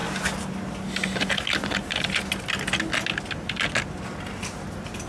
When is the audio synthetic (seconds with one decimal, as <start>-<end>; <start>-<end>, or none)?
none